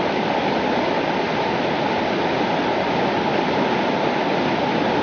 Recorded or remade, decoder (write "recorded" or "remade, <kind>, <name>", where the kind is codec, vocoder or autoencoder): recorded